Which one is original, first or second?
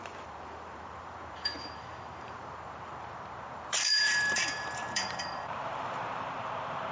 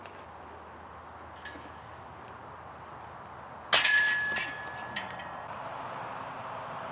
second